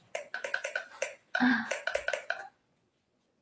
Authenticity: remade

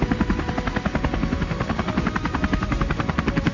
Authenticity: recorded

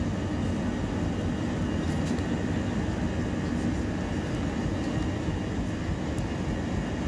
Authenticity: recorded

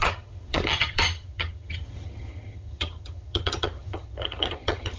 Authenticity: remade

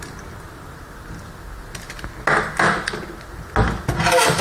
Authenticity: recorded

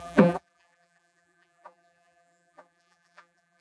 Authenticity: remade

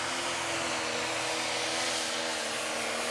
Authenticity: recorded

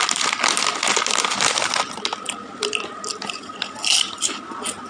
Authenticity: recorded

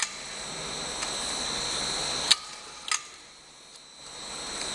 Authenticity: recorded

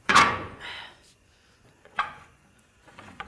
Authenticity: remade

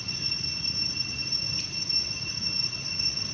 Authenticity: remade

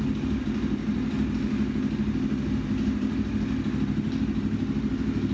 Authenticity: recorded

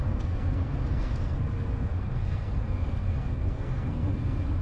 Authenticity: remade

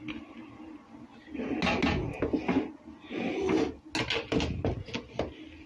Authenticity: recorded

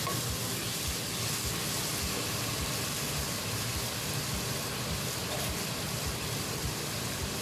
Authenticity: recorded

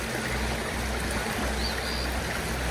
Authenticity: recorded